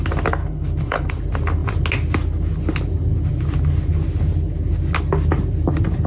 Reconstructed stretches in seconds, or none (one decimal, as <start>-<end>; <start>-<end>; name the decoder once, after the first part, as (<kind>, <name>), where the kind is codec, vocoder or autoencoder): 0.4-1.1 (codec, HILCodec)